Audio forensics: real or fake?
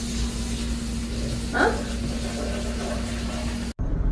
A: real